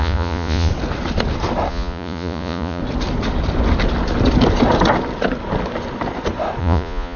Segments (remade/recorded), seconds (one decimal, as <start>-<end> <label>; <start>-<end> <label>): 0.0-0.7 remade; 0.7-1.7 recorded; 1.7-2.8 remade; 2.8-6.6 recorded; 6.6-7.2 remade